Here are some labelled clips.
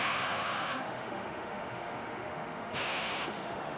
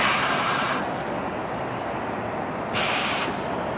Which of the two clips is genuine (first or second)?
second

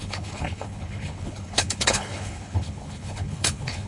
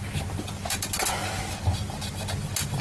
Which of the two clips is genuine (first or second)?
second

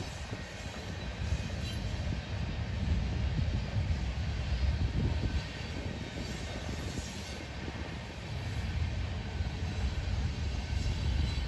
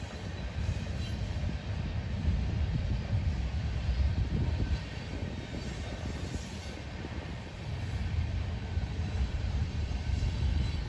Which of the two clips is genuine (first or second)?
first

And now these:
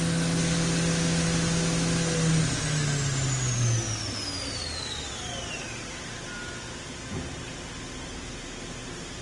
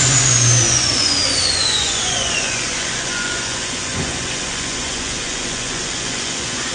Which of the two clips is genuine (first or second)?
first